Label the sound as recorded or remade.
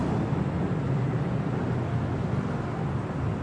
recorded